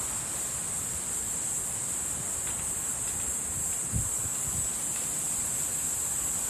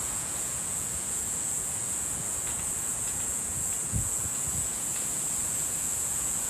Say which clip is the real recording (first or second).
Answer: first